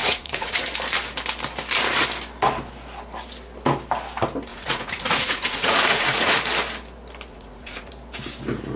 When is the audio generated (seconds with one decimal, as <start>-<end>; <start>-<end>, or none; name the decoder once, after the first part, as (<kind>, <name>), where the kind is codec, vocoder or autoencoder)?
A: 0.0-0.6 (vocoder, Vocos); 4.5-6.4; 7.3-7.9

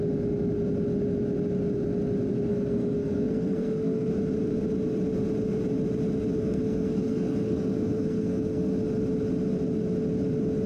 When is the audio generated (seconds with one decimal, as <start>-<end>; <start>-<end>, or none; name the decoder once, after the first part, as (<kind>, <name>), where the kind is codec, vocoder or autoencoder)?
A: 2.5-4.1 (codec, SNAC); 6.4-8.8